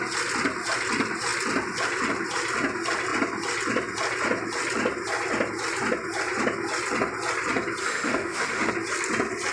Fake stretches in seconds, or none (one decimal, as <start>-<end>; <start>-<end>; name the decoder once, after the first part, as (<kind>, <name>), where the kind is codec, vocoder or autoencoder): 7.8-8.7 (autoencoder, DAC-VAE)